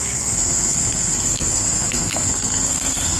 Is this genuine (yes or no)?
no